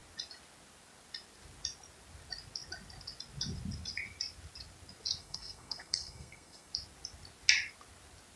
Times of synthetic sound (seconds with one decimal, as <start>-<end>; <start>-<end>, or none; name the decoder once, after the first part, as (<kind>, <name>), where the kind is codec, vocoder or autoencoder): 5.2-6.7 (codec, SNAC)